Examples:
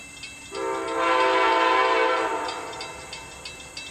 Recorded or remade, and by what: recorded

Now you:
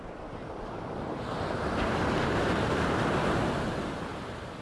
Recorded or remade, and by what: recorded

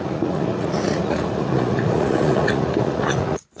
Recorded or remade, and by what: remade, vocoder, Vocos